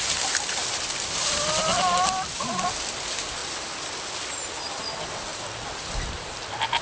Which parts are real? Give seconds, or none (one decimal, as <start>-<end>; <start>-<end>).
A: 0.0-6.8

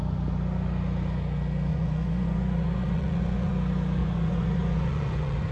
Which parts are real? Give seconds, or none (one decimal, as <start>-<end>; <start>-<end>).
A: 0.0-1.7; 3.5-4.0

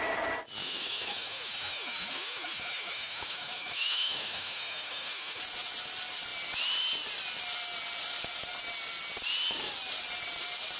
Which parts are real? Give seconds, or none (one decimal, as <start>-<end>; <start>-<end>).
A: 0.0-0.6; 5.4-10.8

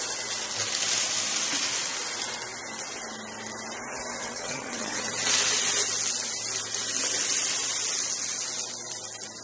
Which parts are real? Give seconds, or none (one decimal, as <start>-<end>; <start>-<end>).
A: 0.0-4.2; 5.0-9.4

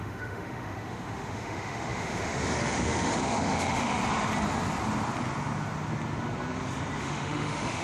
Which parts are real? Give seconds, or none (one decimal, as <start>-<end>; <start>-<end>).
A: 4.0-7.0

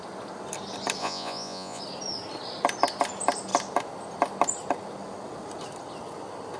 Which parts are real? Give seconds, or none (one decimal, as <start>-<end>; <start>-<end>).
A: 0.0-1.0; 1.8-6.6

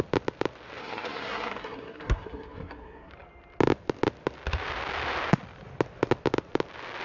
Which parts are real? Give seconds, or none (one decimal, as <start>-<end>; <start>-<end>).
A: 0.0-0.8; 3.1-7.0